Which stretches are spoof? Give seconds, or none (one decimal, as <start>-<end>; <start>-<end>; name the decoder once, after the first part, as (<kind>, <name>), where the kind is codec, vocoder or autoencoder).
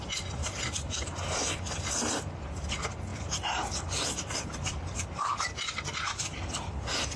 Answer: 0.4-2.0 (vocoder, BigVGAN v2); 3.1-7.2